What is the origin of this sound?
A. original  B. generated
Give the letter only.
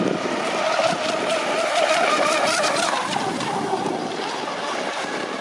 A